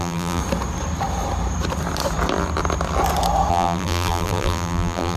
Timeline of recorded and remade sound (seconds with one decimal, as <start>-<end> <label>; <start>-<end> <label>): 0.0-0.4 remade; 0.4-3.5 recorded; 3.5-5.2 remade